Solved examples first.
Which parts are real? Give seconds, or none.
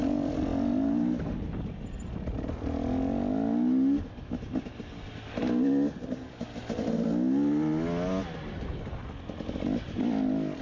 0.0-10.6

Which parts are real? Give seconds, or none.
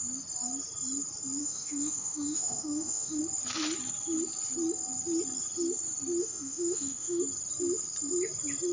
0.0-1.4; 3.2-6.2; 7.2-8.7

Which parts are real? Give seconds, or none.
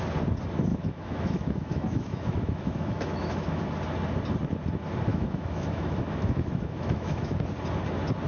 0.0-0.7; 3.6-5.1; 7.4-8.3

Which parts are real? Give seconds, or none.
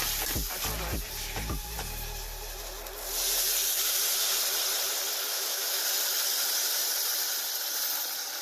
0.0-5.3; 5.8-8.4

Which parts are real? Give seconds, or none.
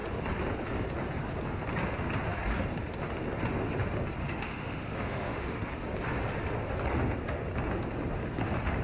0.0-4.2; 5.7-8.8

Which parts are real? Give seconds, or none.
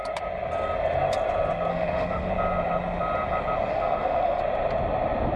0.0-1.7; 2.3-3.7; 4.4-5.4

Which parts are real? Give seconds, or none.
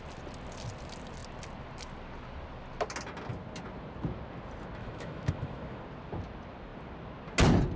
0.0-4.8; 5.8-7.8